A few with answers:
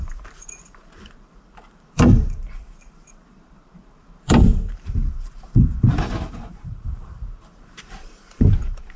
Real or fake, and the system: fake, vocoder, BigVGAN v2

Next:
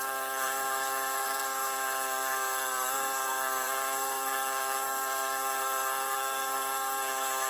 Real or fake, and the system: fake, codec, SNAC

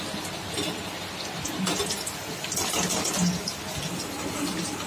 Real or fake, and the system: real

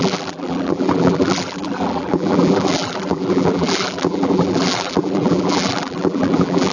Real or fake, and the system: fake, vocoder, BigVGAN v2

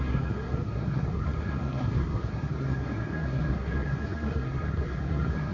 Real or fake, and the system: fake, codec, SNAC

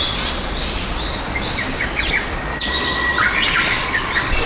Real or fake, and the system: fake, vocoder, Vocos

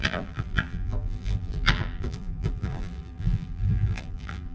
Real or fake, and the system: fake, vocoder, BigVGAN v2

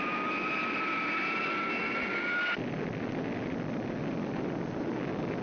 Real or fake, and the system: real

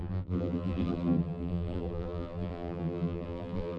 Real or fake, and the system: fake, vocoder, BigVGAN v2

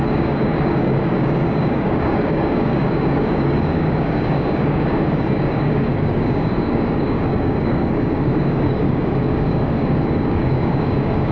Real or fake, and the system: fake, codec, DAC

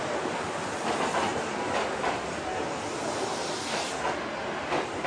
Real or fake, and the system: real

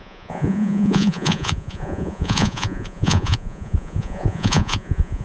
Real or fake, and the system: fake, vocoder, Vocos